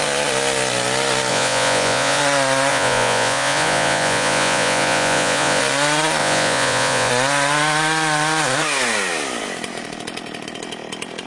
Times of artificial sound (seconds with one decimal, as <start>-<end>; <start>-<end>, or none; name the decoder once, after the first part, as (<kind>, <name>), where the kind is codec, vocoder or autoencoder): 1.3-2.2 (vocoder, Vocos); 2.7-5.6; 6.2-7.1

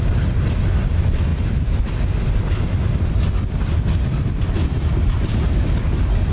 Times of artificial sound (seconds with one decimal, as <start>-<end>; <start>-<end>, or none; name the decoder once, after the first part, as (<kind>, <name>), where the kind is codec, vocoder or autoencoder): none